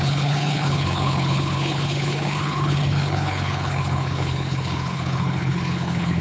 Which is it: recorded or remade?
remade